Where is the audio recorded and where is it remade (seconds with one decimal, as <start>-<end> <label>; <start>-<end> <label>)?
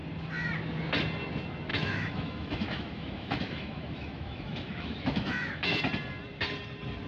0.0-1.7 recorded; 1.7-5.8 remade; 5.8-7.1 recorded